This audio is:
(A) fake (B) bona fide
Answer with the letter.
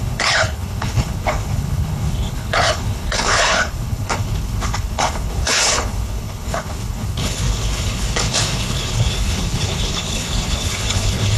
A